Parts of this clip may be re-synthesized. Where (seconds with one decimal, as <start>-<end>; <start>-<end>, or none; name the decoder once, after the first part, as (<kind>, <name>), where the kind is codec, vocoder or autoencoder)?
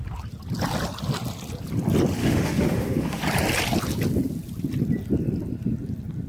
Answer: 2.2-3.2 (autoencoder, DAC-VAE)